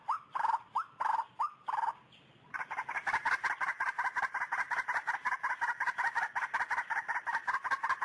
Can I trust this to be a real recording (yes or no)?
yes